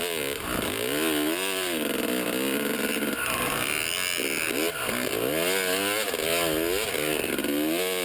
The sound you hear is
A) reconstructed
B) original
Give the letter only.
B